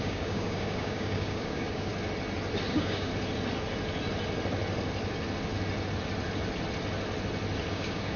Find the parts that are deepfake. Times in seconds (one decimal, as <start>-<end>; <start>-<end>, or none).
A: 0.0-1.9; 2.7-3.1; 7.7-8.2